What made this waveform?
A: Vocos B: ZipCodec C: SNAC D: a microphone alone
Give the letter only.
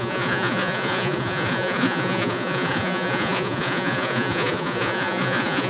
A